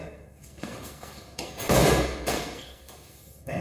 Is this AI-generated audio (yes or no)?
yes